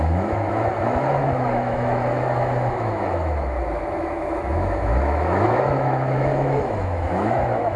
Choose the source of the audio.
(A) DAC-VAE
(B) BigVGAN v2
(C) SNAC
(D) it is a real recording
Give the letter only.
A